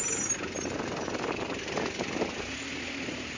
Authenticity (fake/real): real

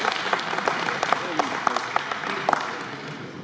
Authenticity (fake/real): real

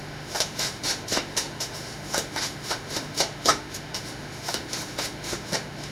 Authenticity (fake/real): fake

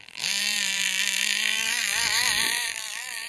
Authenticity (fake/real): fake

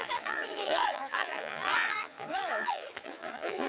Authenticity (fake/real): fake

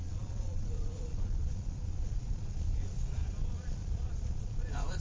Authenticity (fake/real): fake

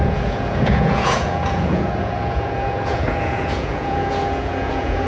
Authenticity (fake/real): fake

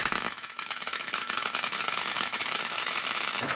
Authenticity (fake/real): fake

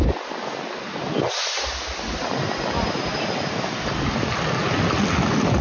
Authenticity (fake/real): real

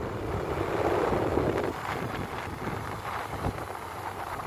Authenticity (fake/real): real